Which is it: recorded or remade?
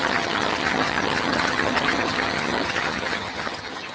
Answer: remade